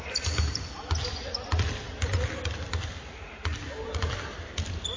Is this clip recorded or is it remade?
recorded